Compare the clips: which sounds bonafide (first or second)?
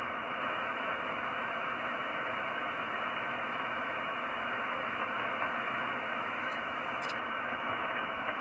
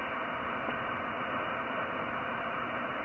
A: second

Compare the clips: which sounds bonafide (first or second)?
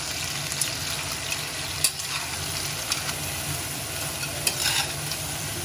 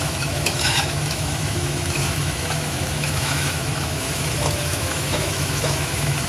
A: first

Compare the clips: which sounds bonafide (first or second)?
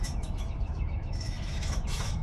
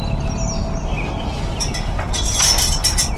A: second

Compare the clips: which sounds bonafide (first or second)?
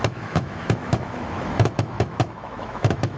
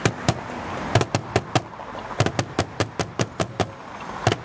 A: second